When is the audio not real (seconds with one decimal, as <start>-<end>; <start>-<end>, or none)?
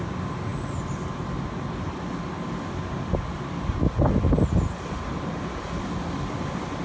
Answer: none